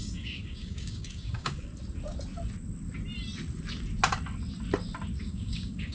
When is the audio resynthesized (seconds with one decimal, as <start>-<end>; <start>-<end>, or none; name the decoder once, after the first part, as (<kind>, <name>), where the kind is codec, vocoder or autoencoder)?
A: 0.0-1.7 (codec, DAC); 5.2-5.9